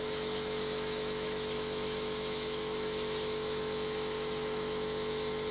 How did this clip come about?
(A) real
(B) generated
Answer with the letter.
B